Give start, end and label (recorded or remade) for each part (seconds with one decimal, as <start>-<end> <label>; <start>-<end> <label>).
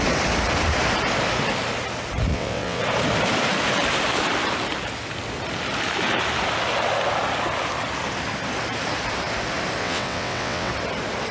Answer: 0.0-2.3 recorded; 2.3-2.8 remade; 2.8-9.8 recorded; 9.8-10.7 remade; 10.7-11.3 recorded